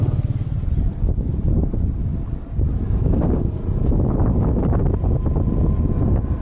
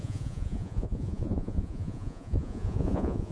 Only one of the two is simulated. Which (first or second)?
second